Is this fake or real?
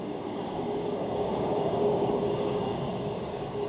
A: fake